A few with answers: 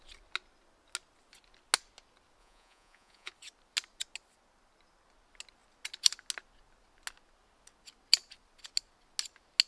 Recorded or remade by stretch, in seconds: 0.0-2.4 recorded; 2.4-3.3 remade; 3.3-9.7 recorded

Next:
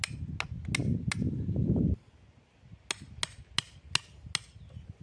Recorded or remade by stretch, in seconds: 0.0-5.0 recorded

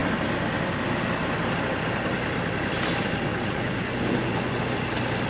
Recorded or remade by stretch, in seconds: 0.0-3.3 recorded; 3.3-4.6 remade; 4.6-5.3 recorded

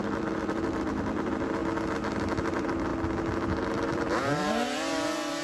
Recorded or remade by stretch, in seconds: 0.0-1.6 remade; 1.6-2.5 recorded; 2.5-2.9 remade; 2.9-3.7 recorded; 3.7-5.4 remade

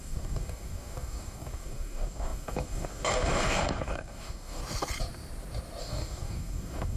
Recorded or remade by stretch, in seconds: 0.0-4.6 remade; 4.6-5.8 recorded; 5.8-7.0 remade

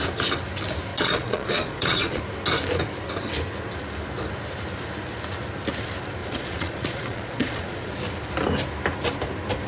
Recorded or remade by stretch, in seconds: 0.0-0.9 recorded; 0.9-2.2 remade; 2.2-6.2 recorded; 6.2-7.9 remade; 7.9-9.7 recorded

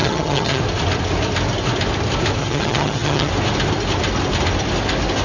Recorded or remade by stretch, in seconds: 0.0-0.6 remade; 0.6-2.4 recorded; 2.4-3.3 remade; 3.3-5.2 recorded

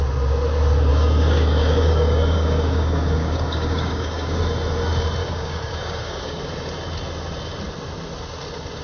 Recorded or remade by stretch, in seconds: 0.0-0.9 recorded; 0.9-4.4 remade; 4.4-5.2 recorded; 5.2-6.4 remade; 6.4-8.8 recorded